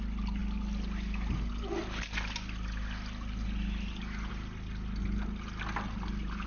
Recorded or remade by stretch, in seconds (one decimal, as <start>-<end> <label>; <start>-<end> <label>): 0.0-6.5 recorded

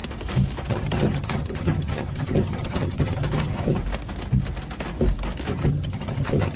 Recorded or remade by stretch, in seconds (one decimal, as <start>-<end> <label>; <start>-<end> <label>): 0.0-0.7 recorded; 0.7-3.8 remade; 3.8-5.5 recorded; 5.5-6.6 remade

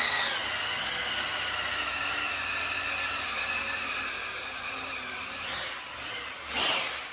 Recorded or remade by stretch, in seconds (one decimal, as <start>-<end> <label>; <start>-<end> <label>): 0.0-7.1 recorded

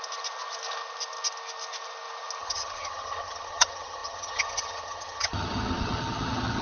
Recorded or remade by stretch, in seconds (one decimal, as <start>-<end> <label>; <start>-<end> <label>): 0.0-2.4 recorded; 2.4-6.6 remade

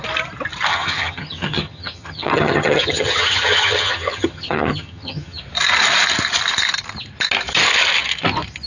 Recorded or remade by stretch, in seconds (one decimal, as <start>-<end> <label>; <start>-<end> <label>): 0.0-0.7 recorded; 0.7-5.4 remade; 5.4-8.7 recorded

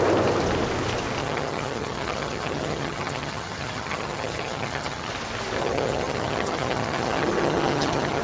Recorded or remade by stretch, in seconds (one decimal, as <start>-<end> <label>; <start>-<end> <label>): 0.0-1.2 recorded; 1.2-5.1 remade; 5.1-5.6 recorded; 5.6-8.2 remade